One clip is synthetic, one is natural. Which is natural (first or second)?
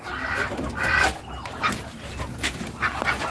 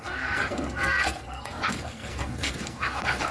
first